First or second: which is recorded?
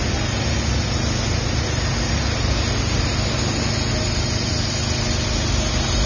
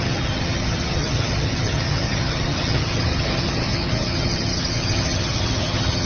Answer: first